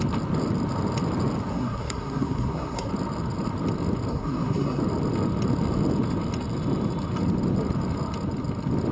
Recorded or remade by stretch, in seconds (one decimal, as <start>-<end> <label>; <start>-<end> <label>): 0.0-1.5 recorded; 1.5-2.9 remade; 2.9-4.1 recorded; 4.1-4.8 remade; 4.8-8.9 recorded